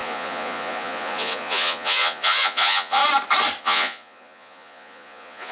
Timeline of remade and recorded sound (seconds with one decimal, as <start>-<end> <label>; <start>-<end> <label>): 0.0-3.0 remade; 3.0-3.6 recorded; 3.6-5.5 remade